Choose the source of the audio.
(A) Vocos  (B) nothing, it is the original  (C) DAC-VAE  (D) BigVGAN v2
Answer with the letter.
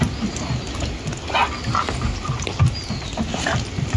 B